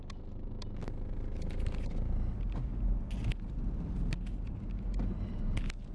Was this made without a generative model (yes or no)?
yes